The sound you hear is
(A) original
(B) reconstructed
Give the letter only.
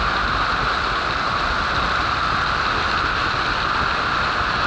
A